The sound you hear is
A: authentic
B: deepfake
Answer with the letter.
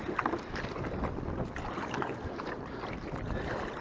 A